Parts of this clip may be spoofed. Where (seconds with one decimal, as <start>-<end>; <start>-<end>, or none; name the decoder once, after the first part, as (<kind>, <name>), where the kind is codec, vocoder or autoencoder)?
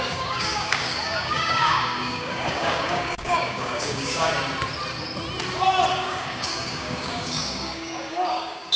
0.0-4.3 (codec, DAC); 5.9-8.8